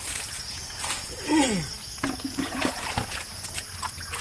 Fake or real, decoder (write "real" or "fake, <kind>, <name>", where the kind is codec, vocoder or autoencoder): fake, vocoder, Vocos